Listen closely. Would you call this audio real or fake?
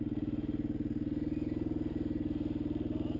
real